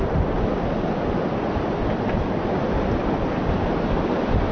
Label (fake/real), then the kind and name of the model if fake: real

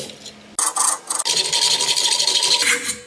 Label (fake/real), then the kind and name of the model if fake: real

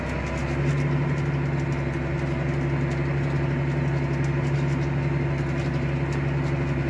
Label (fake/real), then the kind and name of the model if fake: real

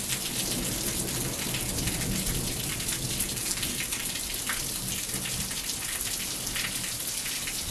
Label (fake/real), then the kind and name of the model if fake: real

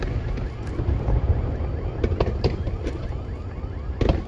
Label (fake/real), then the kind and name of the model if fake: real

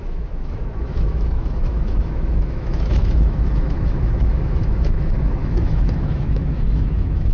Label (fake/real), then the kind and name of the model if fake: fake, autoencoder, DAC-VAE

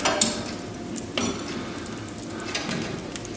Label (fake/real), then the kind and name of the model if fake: real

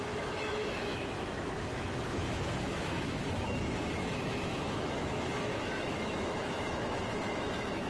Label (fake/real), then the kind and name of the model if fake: fake, autoencoder, DAC-VAE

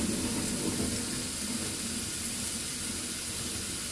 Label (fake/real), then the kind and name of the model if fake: real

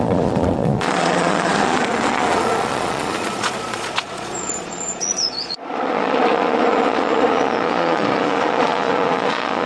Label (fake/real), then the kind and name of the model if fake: fake, vocoder, Vocos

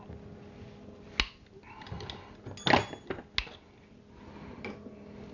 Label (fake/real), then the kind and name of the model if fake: real